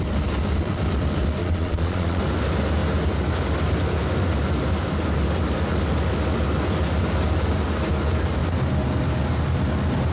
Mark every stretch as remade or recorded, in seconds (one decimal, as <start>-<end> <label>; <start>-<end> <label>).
0.0-1.4 recorded; 1.4-2.2 remade; 2.2-10.1 recorded